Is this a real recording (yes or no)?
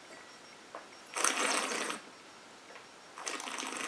yes